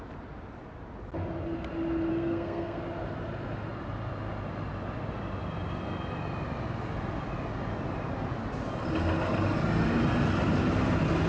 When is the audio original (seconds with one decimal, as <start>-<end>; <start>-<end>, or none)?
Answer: 0.0-2.1; 2.8-11.3